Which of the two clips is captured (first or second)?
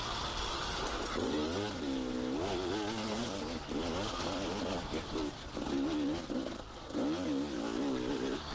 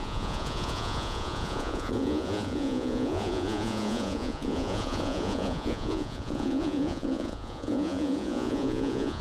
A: first